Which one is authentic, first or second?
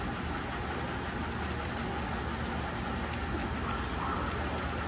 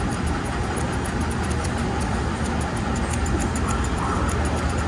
first